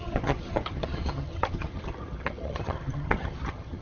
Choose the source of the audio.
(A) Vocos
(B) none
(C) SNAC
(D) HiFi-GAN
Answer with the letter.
D